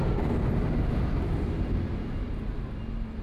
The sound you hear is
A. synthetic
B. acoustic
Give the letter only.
B